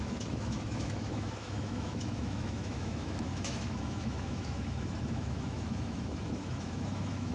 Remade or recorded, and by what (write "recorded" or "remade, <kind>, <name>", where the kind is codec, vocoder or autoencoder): remade, autoencoder, DAC-VAE